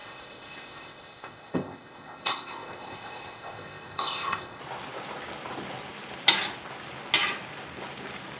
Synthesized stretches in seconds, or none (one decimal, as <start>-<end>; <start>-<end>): 0.0-4.6

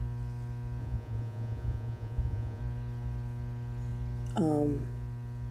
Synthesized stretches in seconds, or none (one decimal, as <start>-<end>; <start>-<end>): 0.8-2.6

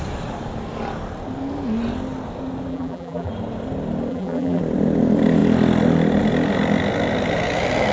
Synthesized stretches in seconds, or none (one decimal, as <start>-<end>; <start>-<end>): 2.7-3.3; 4.1-4.6